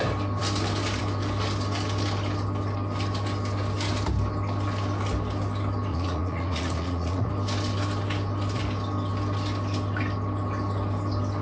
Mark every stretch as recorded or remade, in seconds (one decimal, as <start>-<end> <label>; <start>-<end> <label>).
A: 0.0-5.9 recorded; 5.9-7.3 remade; 7.3-11.4 recorded